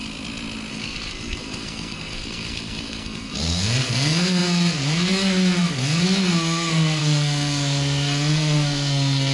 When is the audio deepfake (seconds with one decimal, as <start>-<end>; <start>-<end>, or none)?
0.7-9.3